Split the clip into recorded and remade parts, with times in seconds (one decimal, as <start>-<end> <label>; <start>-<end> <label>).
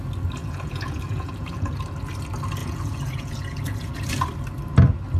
0.0-0.4 recorded; 0.4-1.8 remade; 1.8-2.6 recorded; 2.6-4.1 remade; 4.1-5.2 recorded